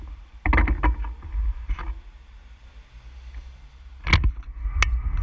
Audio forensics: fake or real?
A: real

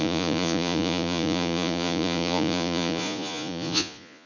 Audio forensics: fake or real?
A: fake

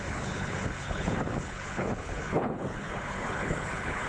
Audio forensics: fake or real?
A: fake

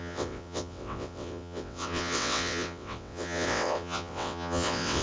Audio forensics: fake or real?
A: fake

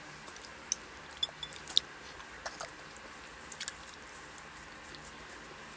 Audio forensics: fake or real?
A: real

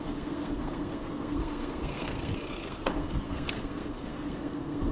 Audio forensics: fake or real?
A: fake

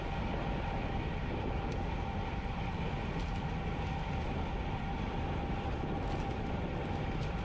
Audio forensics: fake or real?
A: real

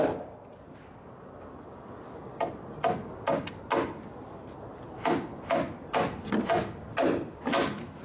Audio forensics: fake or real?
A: real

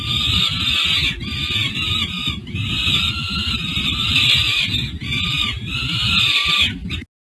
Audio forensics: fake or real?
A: real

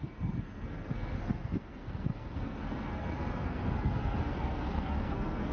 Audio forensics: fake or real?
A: fake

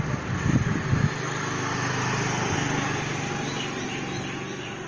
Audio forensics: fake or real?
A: real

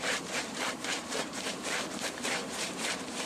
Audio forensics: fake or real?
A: fake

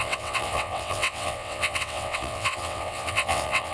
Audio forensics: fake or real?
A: fake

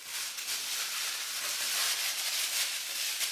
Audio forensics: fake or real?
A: real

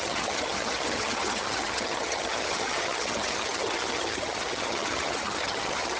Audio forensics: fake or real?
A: fake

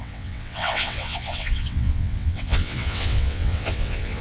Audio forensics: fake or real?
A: fake